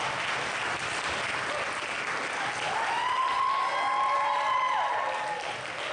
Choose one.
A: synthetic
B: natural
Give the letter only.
B